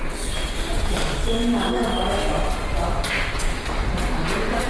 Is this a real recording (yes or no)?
yes